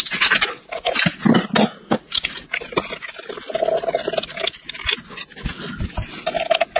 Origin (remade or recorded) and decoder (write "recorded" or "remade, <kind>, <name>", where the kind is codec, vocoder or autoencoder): recorded